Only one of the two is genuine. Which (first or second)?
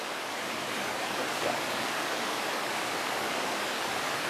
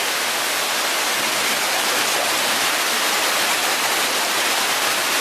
second